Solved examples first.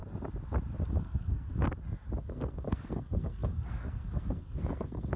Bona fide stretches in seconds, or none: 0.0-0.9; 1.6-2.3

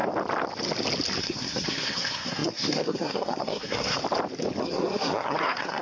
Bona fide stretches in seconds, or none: 0.0-1.2; 4.0-4.6

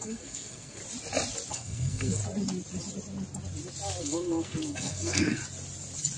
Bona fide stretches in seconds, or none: 0.8-1.5; 2.2-4.0; 5.4-6.2